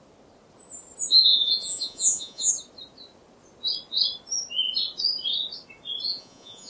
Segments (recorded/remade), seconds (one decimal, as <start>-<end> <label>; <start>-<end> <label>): 0.0-1.1 recorded; 1.1-2.5 remade; 2.5-6.1 recorded; 6.1-6.7 remade